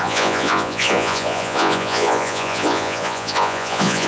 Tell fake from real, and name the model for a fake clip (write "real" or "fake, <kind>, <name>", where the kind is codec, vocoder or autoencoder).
fake, vocoder, Vocos